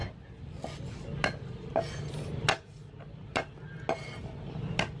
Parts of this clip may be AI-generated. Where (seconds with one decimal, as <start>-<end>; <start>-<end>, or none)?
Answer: none